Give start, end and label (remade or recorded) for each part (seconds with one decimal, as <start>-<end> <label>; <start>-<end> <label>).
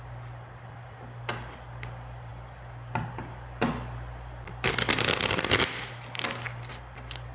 0.0-7.3 recorded